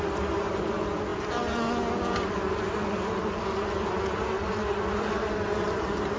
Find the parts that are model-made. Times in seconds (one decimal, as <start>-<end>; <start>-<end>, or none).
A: none

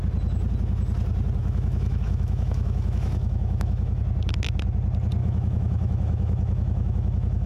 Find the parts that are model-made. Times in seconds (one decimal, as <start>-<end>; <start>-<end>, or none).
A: 1.4-4.0; 5.2-7.5

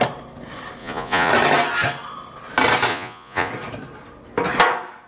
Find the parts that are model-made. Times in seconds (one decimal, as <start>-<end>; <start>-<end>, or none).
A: 0.8-1.3; 2.9-3.5

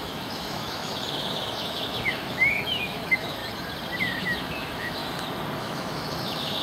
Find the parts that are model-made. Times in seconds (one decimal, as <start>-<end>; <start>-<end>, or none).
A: 0.0-3.4; 4.2-5.0; 5.6-6.6

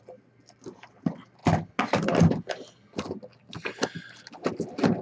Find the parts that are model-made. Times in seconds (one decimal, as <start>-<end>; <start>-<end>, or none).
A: none

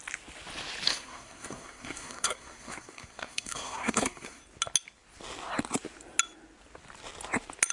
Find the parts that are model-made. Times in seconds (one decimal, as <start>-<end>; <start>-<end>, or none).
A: 0.9-4.4

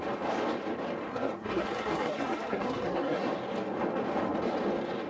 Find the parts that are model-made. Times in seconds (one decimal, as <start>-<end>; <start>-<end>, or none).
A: 1.1-3.3

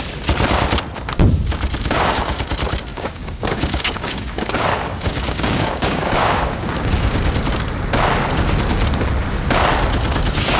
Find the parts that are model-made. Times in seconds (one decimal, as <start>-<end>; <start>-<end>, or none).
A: 1.8-2.5; 2.9-7.3